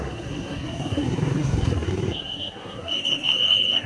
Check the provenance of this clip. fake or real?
fake